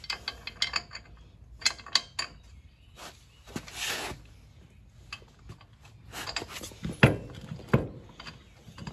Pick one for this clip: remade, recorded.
recorded